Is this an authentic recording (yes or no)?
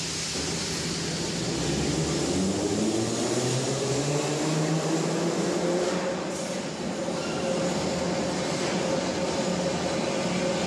yes